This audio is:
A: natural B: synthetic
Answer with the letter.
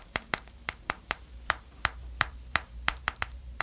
B